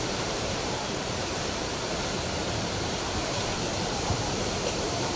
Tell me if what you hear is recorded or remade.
remade